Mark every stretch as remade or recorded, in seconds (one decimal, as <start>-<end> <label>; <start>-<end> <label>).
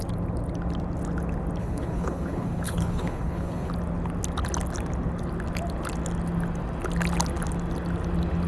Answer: 0.0-1.6 recorded; 1.6-3.7 remade; 3.7-8.5 recorded